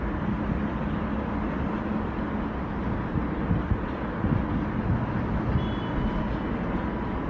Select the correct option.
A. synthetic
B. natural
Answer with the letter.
B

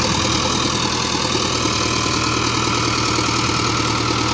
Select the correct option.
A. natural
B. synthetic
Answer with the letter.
A